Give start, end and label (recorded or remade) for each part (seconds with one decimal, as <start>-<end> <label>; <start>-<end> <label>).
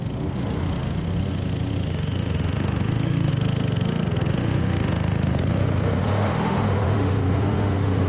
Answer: 0.0-1.9 recorded; 1.9-3.3 remade; 3.3-4.3 recorded; 4.3-8.1 remade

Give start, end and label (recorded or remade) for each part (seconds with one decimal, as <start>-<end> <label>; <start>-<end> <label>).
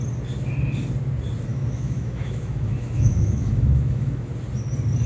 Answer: 0.0-1.5 recorded; 1.5-4.3 remade; 4.3-5.1 recorded